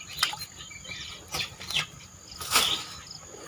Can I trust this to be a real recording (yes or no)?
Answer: yes